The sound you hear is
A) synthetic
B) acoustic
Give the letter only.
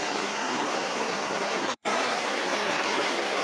A